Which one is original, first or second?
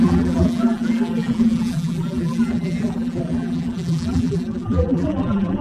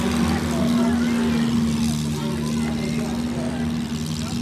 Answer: second